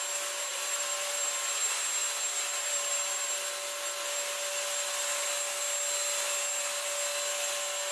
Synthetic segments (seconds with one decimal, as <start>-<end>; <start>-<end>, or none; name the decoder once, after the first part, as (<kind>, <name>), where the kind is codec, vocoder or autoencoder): 0.5-1.3 (vocoder, BigVGAN v2)